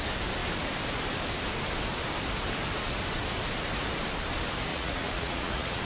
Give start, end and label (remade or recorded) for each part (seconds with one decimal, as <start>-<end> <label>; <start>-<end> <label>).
0.0-4.7 recorded; 4.7-5.8 remade